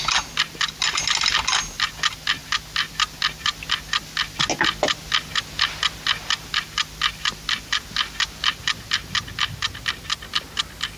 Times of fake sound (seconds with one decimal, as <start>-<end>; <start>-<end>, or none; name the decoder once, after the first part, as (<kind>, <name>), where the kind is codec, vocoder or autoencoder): none